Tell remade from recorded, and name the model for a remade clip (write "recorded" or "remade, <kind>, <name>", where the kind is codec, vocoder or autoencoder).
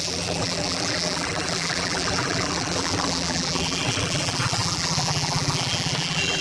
remade, vocoder, BigVGAN v2